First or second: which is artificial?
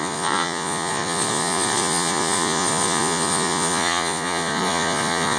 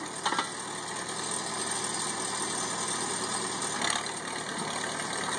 first